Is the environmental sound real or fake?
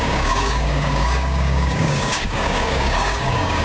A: fake